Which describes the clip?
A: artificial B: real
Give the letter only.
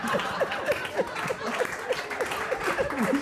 B